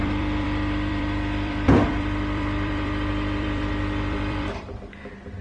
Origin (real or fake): fake